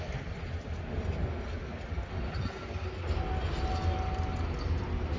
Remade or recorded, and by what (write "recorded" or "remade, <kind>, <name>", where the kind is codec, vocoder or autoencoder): recorded